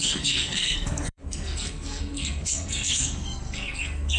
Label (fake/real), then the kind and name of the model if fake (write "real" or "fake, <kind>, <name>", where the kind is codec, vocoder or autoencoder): fake, codec, SNAC